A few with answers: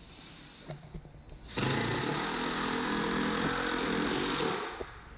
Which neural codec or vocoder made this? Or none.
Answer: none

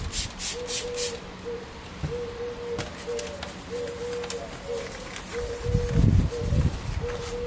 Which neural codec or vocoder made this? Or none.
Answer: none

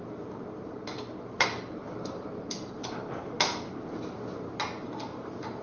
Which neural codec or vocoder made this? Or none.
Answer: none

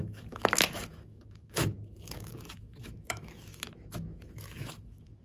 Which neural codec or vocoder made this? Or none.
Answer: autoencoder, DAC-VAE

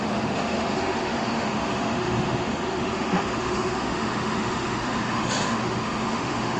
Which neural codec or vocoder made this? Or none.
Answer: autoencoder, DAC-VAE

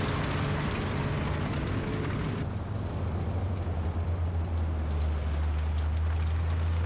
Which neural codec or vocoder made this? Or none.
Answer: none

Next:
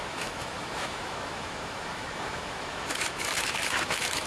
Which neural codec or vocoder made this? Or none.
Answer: autoencoder, DAC-VAE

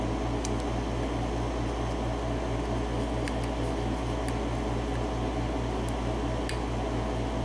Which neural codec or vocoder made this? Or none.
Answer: none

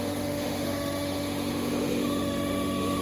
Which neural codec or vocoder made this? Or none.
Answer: autoencoder, DAC-VAE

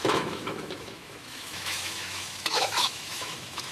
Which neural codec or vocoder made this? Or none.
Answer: autoencoder, DAC-VAE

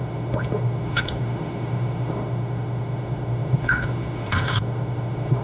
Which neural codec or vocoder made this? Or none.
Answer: autoencoder, DAC-VAE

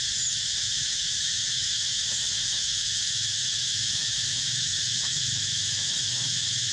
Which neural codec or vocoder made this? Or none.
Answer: autoencoder, DAC-VAE